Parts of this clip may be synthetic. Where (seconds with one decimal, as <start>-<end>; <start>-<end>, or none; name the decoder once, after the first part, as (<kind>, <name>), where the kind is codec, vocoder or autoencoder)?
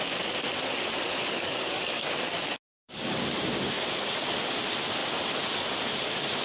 1.1-2.1 (codec, DAC); 2.7-3.2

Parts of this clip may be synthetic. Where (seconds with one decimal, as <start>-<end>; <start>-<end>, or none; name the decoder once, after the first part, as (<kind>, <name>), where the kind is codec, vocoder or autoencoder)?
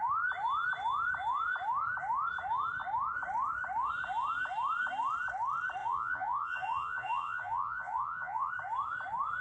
5.8-8.5 (vocoder, Vocos)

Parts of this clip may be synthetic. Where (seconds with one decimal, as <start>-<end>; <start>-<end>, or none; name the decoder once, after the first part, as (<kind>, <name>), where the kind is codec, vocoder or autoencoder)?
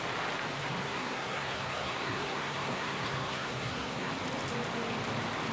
0.8-4.1 (codec, SNAC)